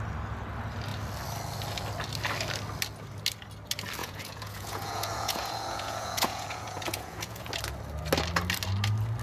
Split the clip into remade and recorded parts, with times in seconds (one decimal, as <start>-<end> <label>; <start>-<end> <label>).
0.0-4.0 recorded; 4.0-7.5 remade; 7.5-9.2 recorded